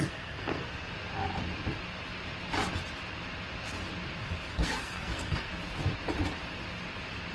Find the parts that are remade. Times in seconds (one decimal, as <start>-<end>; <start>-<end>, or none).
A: 0.0-0.9; 4.5-5.5